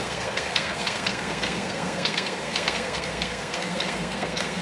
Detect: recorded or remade remade